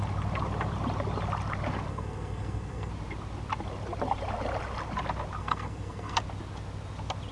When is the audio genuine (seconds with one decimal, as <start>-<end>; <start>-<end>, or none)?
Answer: 0.0-1.9; 2.9-5.4; 6.2-7.3